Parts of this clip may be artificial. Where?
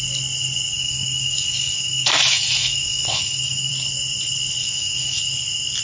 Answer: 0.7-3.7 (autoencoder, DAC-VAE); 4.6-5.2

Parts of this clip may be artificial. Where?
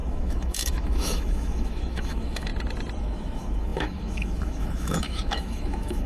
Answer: 0.0-2.5 (autoencoder, DAC-VAE); 3.0-6.1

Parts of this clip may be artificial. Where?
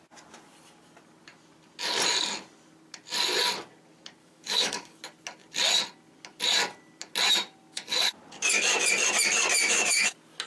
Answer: 4.2-5.0 (autoencoder, DAC-VAE); 9.6-10.1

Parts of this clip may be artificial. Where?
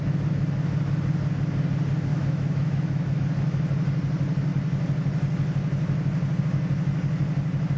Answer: 2.1-3.2 (autoencoder, DAC-VAE)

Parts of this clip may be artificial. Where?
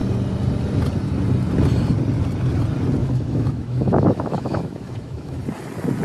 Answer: 3.0-5.4 (autoencoder, DAC-VAE)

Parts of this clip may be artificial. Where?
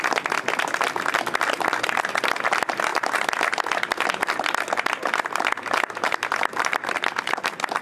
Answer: none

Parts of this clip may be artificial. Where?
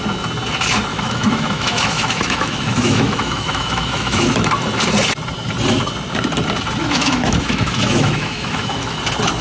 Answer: 0.9-4.5 (autoencoder, DAC-VAE); 6.8-9.0